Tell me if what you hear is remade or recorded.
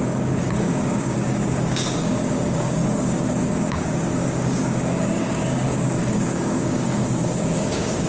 remade